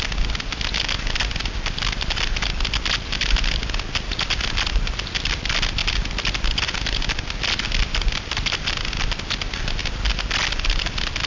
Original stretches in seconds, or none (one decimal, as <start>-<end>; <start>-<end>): 0.0-11.3